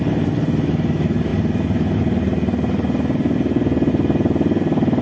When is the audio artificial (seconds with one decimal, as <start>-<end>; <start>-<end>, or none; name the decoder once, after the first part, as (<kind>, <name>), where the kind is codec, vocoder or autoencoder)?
none